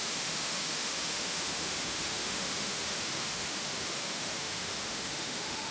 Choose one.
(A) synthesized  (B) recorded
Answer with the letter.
A